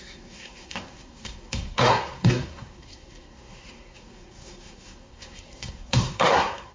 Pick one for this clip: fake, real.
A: fake